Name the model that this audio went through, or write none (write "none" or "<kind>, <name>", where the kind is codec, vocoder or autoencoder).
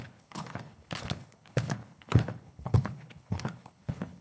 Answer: codec, HILCodec